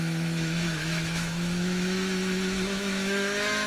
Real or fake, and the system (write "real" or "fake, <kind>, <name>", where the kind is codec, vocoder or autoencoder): fake, autoencoder, DAC-VAE